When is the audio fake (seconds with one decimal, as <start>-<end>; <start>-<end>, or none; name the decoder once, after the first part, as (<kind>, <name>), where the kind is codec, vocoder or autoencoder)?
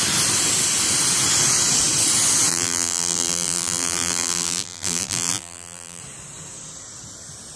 2.5-6.0 (vocoder, BigVGAN v2)